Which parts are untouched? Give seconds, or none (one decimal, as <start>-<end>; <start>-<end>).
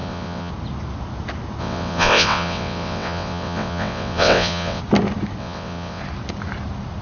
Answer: 0.5-1.6; 4.8-5.4; 6.0-7.0